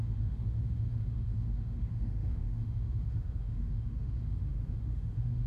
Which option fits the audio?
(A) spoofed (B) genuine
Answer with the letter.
A